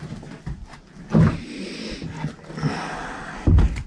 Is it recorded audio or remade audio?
recorded